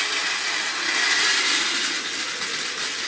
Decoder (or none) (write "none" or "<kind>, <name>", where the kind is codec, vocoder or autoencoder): none